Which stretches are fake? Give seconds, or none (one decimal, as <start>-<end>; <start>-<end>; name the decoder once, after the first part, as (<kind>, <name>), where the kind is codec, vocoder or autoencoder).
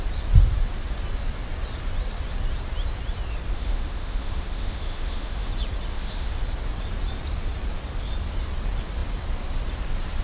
3.5-5.5 (autoencoder, DAC-VAE); 5.9-6.4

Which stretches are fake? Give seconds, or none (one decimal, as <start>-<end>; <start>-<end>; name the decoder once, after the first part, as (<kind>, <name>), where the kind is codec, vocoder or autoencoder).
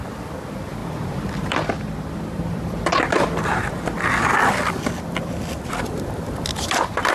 0.0-7.1 (vocoder, BigVGAN v2)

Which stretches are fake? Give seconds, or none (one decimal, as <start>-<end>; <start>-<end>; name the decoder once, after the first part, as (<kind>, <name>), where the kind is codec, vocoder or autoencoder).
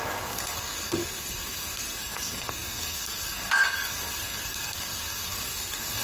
0.0-6.0 (codec, SNAC)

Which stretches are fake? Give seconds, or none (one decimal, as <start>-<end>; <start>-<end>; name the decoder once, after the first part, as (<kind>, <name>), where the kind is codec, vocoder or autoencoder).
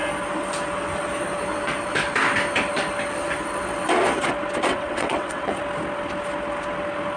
4.7-5.5 (vocoder, WaveNeXt)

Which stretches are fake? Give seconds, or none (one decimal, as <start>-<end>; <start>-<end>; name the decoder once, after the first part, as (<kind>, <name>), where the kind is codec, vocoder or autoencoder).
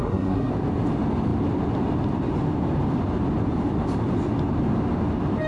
0.0-0.5 (codec, SNAC)